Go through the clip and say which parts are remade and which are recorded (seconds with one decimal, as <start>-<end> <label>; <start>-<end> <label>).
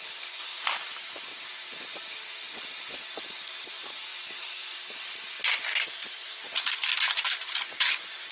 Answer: 0.0-0.5 recorded; 0.5-1.1 remade; 1.1-8.3 recorded